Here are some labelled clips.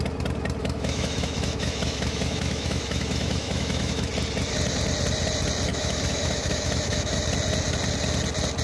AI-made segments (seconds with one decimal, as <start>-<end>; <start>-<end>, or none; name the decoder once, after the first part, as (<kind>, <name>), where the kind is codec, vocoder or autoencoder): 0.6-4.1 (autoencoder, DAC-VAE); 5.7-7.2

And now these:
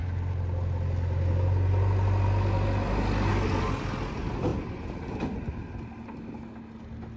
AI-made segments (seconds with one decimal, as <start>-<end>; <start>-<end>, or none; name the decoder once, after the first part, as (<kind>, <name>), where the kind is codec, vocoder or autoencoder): none

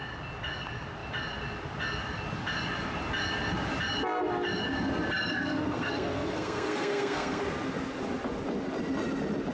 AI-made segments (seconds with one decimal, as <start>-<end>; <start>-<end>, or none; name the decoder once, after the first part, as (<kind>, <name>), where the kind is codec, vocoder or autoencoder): 5.3-7.4 (codec, SNAC)

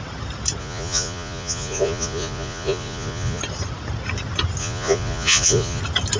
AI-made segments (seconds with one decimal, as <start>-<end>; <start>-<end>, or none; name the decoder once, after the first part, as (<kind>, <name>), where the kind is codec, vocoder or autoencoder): 0.6-3.4 (vocoder, Vocos); 4.6-5.8

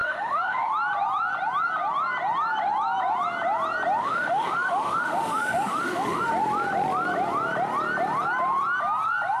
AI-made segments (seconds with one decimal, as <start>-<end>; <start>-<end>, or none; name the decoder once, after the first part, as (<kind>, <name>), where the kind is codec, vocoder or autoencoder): 0.0-0.7 (autoencoder, DAC-VAE); 4.0-6.3

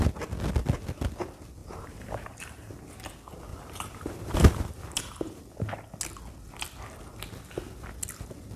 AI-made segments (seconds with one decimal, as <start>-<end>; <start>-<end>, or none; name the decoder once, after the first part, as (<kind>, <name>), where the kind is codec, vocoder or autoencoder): 1.6-2.7 (vocoder, BigVGAN v2); 3.5-5.4